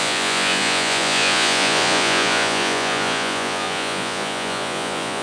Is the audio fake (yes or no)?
yes